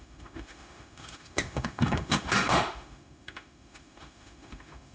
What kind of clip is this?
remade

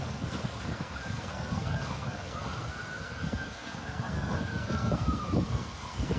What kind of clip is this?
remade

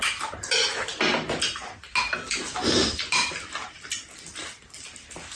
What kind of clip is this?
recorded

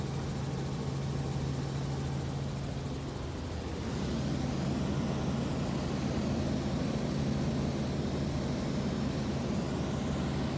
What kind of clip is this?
recorded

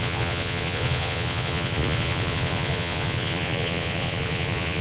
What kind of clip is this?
remade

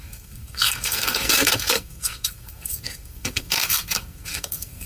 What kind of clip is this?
remade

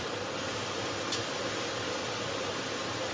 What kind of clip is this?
recorded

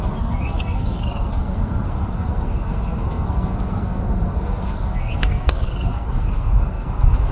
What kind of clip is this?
remade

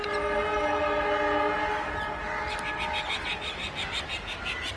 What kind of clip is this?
recorded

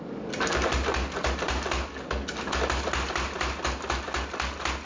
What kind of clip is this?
recorded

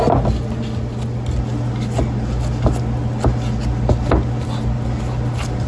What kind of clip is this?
recorded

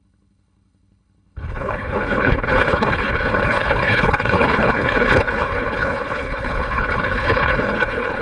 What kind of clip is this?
remade